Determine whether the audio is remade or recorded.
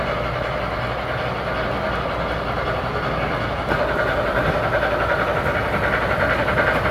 recorded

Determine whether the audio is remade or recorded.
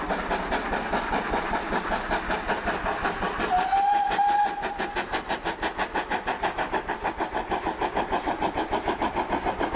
recorded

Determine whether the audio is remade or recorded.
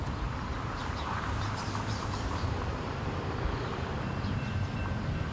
remade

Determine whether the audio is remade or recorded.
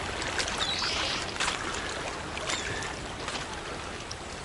recorded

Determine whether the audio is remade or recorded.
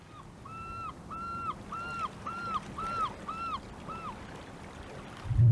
recorded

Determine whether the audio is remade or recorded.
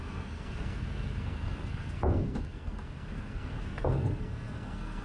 remade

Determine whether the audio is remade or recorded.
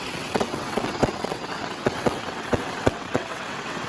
remade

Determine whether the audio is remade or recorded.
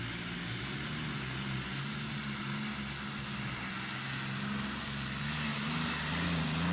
recorded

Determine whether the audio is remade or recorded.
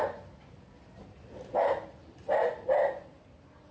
recorded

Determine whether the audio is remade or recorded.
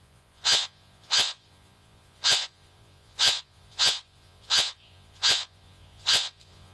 remade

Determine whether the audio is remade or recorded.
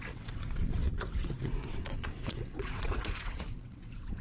remade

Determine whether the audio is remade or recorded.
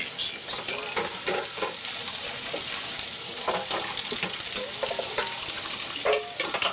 recorded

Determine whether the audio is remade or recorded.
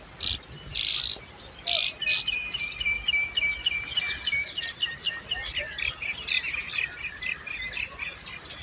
recorded